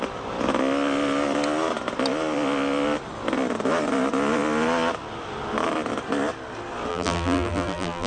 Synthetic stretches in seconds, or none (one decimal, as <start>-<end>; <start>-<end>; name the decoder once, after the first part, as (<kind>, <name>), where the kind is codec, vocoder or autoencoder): 6.9-8.1 (vocoder, BigVGAN v2)